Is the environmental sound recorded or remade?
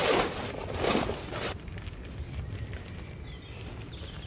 recorded